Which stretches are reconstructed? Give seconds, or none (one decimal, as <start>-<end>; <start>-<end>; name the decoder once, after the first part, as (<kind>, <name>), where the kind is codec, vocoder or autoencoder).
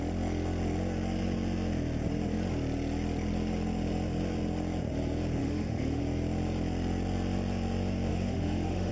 5.4-6.0 (autoencoder, DAC-VAE); 8.1-8.9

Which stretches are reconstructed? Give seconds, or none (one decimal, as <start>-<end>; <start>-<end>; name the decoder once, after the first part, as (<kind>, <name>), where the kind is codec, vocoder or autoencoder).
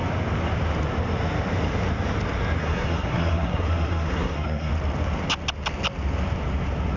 2.6-4.7 (codec, SNAC)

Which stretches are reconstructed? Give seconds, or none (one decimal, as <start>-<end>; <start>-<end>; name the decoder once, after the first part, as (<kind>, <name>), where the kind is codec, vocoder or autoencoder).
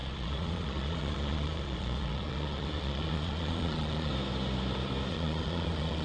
0.0-4.1 (vocoder, Vocos); 5.1-6.0